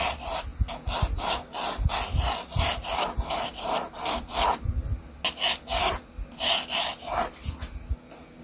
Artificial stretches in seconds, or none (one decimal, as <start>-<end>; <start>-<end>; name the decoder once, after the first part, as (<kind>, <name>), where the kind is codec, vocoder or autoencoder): none